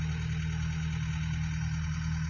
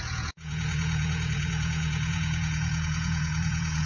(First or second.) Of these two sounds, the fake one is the second